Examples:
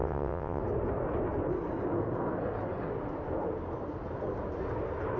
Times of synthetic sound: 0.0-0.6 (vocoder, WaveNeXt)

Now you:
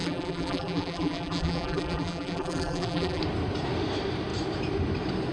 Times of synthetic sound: 0.0-3.2 (vocoder, BigVGAN v2)